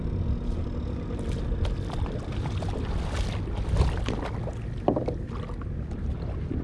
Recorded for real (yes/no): yes